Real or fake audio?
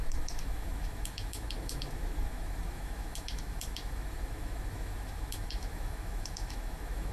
fake